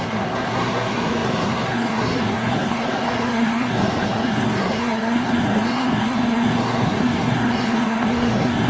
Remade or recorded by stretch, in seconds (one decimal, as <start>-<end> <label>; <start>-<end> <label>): 0.0-8.7 remade

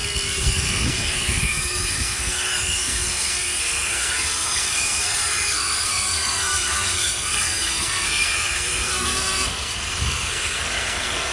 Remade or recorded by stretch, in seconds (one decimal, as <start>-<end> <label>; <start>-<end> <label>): 0.0-11.3 remade

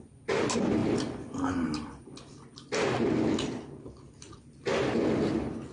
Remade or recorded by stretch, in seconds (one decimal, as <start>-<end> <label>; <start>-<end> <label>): 0.0-5.7 recorded

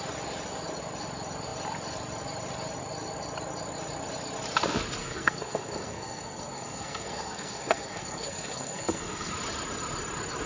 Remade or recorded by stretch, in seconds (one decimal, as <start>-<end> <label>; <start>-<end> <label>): 0.0-5.0 recorded; 5.0-9.3 remade; 9.3-10.5 recorded

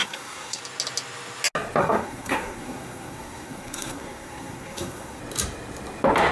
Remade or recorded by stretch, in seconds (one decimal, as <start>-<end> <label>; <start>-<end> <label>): 0.0-0.6 remade; 0.6-1.8 recorded; 1.8-5.2 remade; 5.2-6.3 recorded

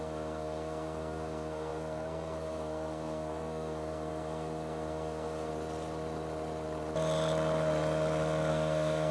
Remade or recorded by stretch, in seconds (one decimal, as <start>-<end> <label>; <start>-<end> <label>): 0.0-5.5 remade; 5.5-8.5 recorded; 8.5-9.1 remade

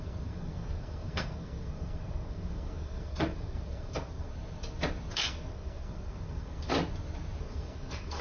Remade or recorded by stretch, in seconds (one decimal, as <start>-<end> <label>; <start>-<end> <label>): 0.0-4.3 remade; 4.3-5.1 recorded; 5.1-6.7 remade; 6.7-7.4 recorded; 7.4-8.2 remade

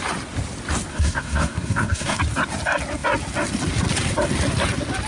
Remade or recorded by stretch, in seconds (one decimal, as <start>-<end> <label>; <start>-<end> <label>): 0.0-0.9 recorded; 0.9-2.2 remade; 2.2-5.1 recorded